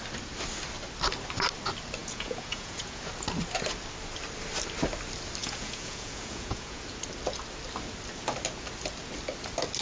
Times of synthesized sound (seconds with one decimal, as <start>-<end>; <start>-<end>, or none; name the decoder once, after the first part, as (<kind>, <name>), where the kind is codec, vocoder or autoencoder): 2.0-3.0 (vocoder, Vocos); 5.4-6.8